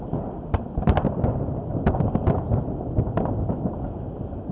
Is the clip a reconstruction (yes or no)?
no